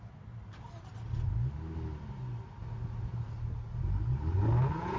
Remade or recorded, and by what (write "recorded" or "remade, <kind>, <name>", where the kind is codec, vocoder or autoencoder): recorded